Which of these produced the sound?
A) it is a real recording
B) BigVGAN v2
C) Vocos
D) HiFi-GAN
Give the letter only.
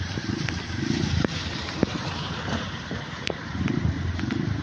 B